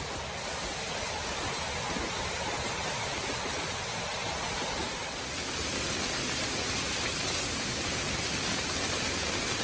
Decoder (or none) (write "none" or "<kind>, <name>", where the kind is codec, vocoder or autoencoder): none